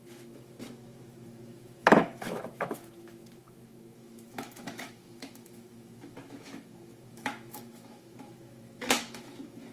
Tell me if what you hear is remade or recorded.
remade